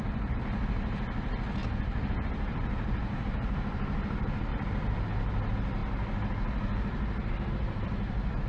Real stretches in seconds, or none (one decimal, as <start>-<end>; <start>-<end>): 0.0-8.5